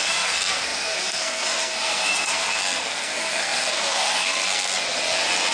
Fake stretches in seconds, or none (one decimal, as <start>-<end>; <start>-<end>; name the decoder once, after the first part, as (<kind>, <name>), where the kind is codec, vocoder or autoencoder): 0.0-4.7 (codec, SNAC)